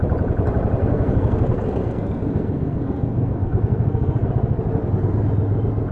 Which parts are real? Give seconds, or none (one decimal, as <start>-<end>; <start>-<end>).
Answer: 0.0-0.8; 4.3-5.9